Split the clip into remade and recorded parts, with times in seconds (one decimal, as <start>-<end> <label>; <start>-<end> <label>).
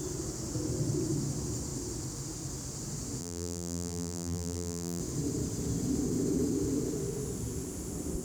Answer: 0.0-3.2 recorded; 3.2-5.0 remade; 5.0-8.2 recorded